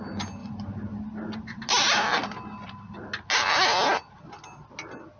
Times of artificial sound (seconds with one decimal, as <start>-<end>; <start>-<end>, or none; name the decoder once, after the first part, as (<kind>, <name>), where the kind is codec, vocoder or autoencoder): none